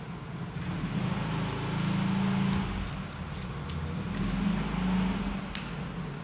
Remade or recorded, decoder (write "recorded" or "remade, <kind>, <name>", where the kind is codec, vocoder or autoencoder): recorded